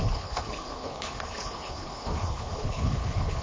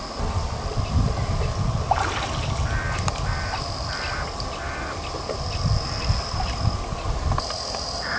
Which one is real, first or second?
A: second